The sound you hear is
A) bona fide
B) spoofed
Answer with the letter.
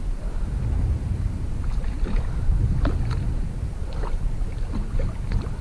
A